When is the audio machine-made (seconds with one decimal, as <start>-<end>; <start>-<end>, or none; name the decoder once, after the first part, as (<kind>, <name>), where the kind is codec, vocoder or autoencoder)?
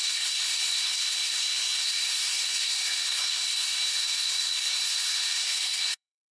0.0-6.3 (codec, SNAC)